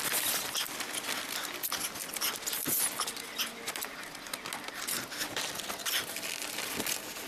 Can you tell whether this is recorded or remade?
recorded